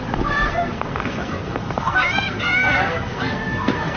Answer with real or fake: fake